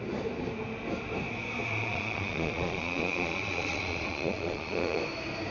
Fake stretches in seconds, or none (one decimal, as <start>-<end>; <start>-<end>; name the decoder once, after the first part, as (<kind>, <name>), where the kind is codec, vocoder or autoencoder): 1.7-5.0 (vocoder, Vocos)